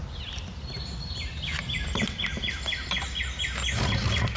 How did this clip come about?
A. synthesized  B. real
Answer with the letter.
B